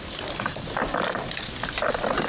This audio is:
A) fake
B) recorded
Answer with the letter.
B